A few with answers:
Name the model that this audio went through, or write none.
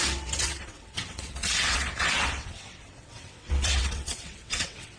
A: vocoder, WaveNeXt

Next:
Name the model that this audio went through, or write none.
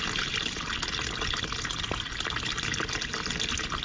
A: none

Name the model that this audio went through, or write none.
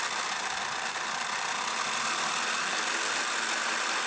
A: none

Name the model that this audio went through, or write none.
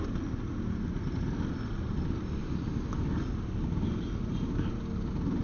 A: none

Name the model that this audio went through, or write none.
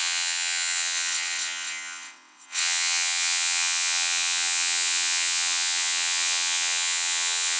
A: vocoder, WaveNeXt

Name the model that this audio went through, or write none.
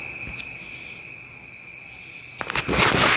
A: none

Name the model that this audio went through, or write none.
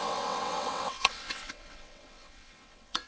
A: vocoder, WaveNeXt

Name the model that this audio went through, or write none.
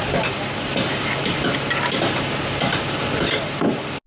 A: none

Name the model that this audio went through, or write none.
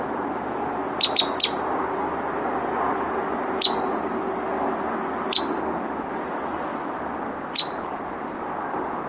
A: none